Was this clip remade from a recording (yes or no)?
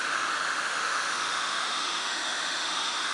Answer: yes